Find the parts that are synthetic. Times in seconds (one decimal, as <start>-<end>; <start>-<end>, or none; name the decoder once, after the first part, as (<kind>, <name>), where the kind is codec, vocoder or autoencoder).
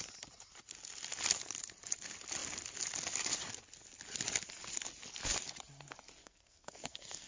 6.2-7.3 (codec, SNAC)